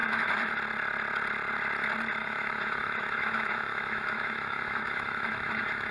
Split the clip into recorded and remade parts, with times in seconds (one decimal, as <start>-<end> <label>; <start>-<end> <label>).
0.0-0.5 remade; 0.5-2.2 recorded; 2.2-5.9 remade

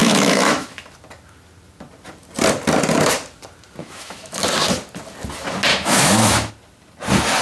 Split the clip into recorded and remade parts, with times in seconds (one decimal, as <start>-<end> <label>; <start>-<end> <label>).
0.0-0.8 remade; 0.8-3.8 recorded; 3.8-4.4 remade; 4.4-5.7 recorded; 5.7-6.5 remade; 6.5-7.4 recorded

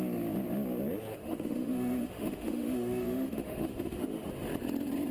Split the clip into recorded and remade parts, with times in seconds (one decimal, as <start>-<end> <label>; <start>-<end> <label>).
0.0-1.2 recorded; 1.2-4.3 remade; 4.3-5.1 recorded

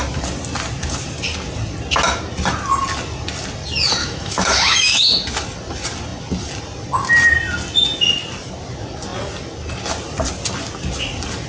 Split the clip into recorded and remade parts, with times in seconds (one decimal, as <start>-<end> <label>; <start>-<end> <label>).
0.0-4.0 recorded; 4.0-5.0 remade; 5.0-11.5 recorded

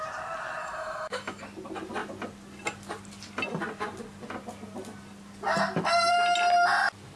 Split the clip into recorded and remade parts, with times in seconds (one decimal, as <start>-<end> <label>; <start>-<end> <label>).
0.0-0.6 recorded; 0.6-1.4 remade; 1.4-7.2 recorded